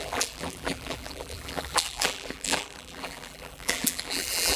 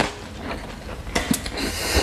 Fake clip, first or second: first